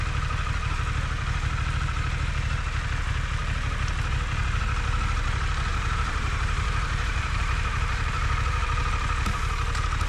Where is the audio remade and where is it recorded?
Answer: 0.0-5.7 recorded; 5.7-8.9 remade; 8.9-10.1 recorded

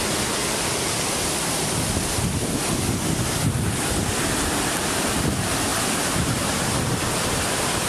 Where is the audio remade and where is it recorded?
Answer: 0.0-0.4 recorded; 0.4-5.1 remade; 5.1-5.7 recorded; 5.7-7.1 remade; 7.1-7.9 recorded